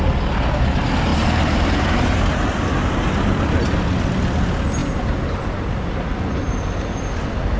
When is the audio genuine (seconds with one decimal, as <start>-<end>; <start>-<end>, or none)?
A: 0.0-1.1; 2.3-4.8; 6.6-7.6